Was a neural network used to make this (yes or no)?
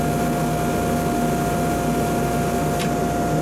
no